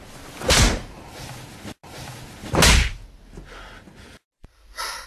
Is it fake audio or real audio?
real